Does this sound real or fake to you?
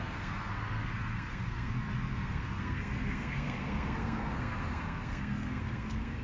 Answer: fake